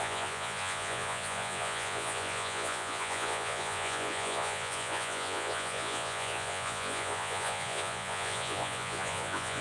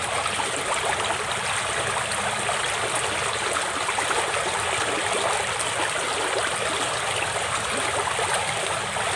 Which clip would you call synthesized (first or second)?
first